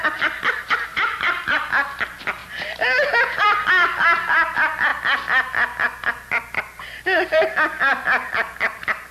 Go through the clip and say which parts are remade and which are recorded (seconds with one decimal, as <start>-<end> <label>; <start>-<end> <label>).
0.0-0.9 recorded; 0.9-1.7 remade; 1.7-2.4 recorded; 2.4-3.1 remade; 3.1-9.1 recorded